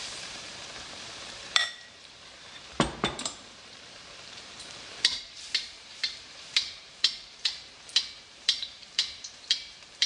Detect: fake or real fake